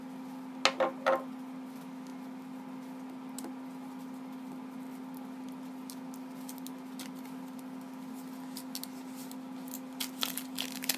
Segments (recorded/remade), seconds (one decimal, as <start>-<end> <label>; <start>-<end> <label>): 0.0-11.0 recorded